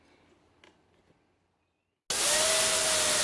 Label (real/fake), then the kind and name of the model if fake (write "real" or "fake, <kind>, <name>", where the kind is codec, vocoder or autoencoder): real